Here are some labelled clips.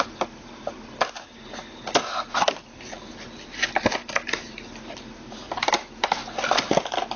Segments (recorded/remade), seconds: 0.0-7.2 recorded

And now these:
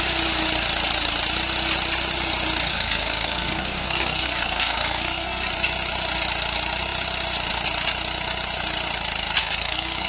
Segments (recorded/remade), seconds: 0.0-2.7 recorded; 2.7-5.5 remade; 5.5-9.4 recorded; 9.4-10.1 remade